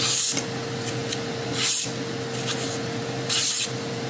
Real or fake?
real